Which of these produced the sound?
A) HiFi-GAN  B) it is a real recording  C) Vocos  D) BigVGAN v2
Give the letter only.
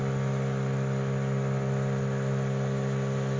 B